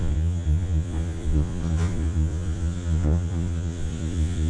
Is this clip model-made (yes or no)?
yes